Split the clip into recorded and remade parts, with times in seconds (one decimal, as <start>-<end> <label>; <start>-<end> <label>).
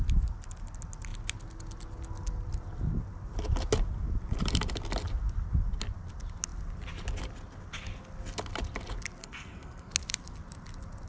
0.0-9.2 recorded; 9.2-9.9 remade; 9.9-11.1 recorded